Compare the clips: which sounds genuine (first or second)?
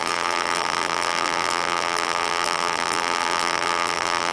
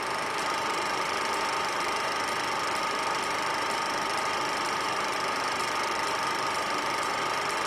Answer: second